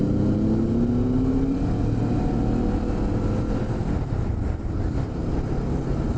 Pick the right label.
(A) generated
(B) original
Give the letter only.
B